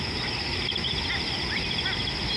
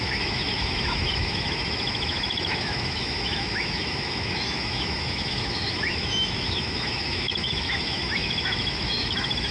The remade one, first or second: second